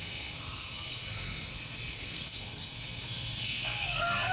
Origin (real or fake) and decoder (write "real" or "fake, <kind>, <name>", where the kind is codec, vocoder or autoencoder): fake, codec, SNAC